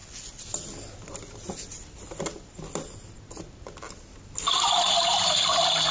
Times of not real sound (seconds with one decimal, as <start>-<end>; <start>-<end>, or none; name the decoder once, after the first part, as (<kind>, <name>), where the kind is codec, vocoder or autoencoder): none